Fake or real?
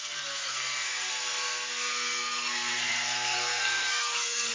fake